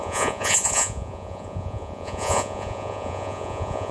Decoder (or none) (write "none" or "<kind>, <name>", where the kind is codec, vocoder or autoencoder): vocoder, Vocos